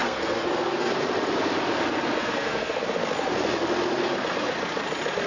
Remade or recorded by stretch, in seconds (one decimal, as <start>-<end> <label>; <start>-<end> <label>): 0.0-0.9 remade; 0.9-2.2 recorded; 2.2-2.8 remade; 2.8-5.3 recorded